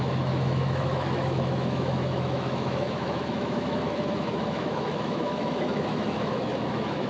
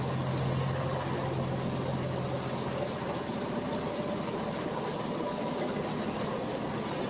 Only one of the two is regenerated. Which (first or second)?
first